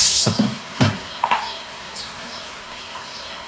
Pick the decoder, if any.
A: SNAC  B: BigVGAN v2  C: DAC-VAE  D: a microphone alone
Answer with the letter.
A